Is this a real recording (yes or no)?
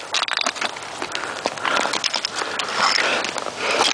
yes